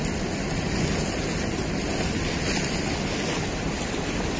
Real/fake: real